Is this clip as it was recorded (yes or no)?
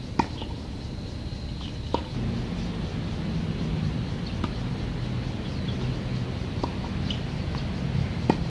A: yes